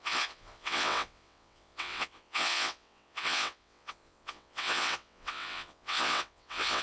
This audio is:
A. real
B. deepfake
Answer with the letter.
B